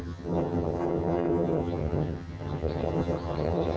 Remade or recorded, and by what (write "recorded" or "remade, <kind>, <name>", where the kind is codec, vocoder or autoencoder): remade, vocoder, HiFi-GAN